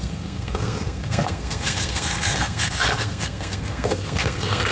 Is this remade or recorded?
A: remade